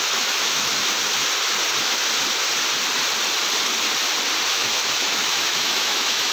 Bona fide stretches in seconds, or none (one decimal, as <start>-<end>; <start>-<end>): 0.7-4.5